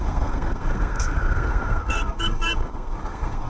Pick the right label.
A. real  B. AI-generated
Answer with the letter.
B